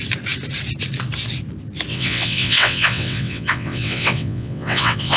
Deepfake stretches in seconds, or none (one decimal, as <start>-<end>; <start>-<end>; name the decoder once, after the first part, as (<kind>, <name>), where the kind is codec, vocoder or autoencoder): 1.9-5.2 (vocoder, WaveNeXt)